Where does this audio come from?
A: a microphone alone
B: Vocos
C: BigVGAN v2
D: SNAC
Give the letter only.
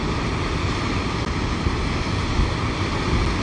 A